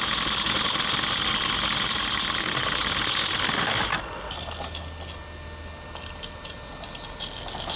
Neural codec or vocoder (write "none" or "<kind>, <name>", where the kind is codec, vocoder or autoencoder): none